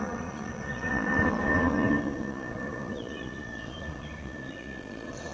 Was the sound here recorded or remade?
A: remade